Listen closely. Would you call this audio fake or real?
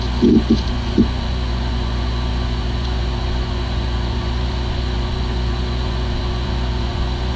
fake